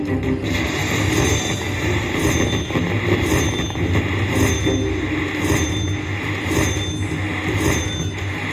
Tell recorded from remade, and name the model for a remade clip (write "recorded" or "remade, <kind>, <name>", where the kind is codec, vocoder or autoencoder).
recorded